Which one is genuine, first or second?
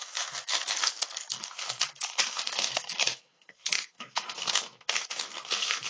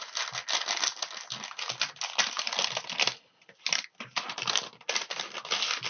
second